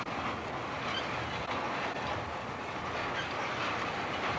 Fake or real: real